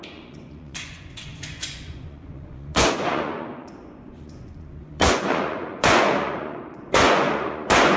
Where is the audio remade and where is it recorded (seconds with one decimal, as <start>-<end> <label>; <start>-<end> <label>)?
0.0-8.0 remade